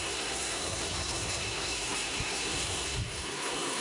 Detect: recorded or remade remade